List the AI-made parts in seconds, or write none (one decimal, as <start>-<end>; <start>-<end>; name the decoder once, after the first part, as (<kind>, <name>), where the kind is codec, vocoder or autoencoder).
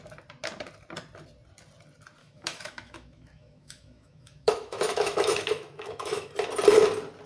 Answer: 2.2-6.3 (autoencoder, DAC-VAE)